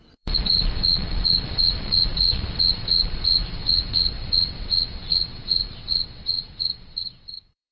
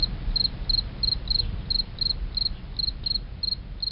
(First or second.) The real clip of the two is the second